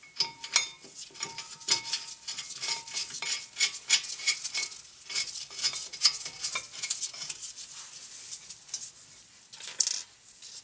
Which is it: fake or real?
real